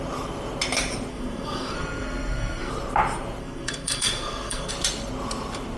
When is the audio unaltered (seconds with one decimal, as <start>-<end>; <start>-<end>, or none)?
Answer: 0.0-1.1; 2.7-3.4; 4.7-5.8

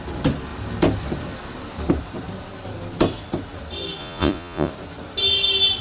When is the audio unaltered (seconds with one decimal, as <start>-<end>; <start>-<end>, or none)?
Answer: 0.0-4.0; 4.7-5.8

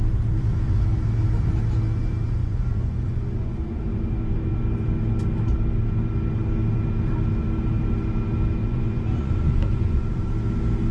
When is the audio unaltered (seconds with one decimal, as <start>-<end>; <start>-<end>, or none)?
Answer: 0.0-2.4; 3.8-8.6; 10.3-10.9

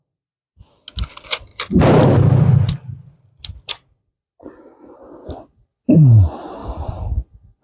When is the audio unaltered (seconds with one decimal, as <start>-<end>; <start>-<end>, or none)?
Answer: 0.0-6.6; 7.1-7.6

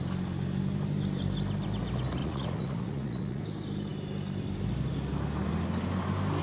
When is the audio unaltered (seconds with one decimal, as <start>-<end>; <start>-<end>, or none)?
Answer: 0.0-2.2; 3.4-6.4

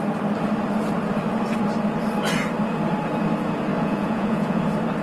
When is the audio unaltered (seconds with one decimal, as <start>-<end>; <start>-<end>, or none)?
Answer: 0.0-3.7; 4.6-5.0

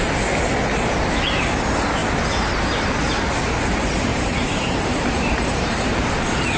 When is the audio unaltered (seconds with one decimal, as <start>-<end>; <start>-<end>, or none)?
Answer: 0.0-4.1; 6.1-6.6